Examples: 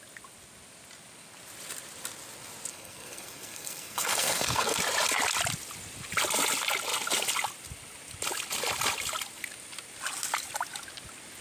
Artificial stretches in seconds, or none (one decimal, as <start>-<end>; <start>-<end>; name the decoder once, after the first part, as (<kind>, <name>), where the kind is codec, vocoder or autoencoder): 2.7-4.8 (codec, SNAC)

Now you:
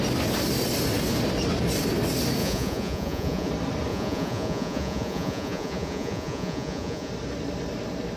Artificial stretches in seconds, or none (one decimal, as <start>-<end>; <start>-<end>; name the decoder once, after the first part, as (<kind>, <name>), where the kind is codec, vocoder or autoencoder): 2.4-3.5 (vocoder, Vocos); 3.9-7.1

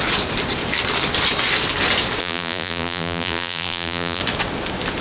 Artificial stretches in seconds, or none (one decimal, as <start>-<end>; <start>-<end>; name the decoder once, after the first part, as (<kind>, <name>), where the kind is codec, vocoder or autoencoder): 2.2-4.2 (vocoder, BigVGAN v2)

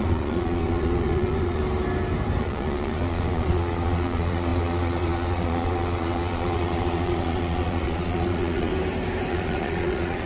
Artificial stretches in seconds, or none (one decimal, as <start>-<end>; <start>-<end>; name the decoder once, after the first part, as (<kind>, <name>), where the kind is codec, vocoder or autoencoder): 0.0-1.6 (vocoder, Vocos); 2.4-8.7; 9.3-10.3

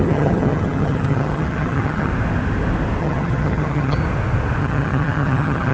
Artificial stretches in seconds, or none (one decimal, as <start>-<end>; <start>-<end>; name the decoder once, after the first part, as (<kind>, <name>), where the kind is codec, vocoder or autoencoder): 0.0-2.1 (vocoder, HiFi-GAN); 3.0-4.0; 4.6-5.7

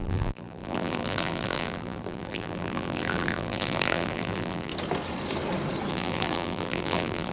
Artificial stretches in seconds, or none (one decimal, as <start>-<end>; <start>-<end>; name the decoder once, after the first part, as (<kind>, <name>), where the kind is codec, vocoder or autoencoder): 0.0-4.7 (vocoder, BigVGAN v2); 5.9-7.3

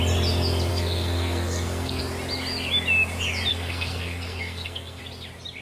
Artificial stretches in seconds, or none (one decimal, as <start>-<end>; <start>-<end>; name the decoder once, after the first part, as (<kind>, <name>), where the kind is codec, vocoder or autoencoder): 0.7-2.0 (codec, SNAC); 3.5-5.0